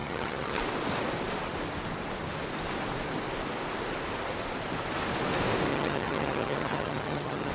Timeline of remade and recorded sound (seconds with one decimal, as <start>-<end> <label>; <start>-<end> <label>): 0.0-0.6 remade; 0.6-5.7 recorded; 5.7-7.5 remade